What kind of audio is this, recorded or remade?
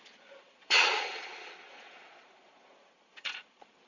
remade